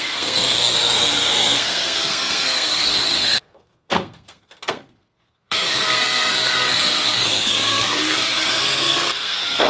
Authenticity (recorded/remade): remade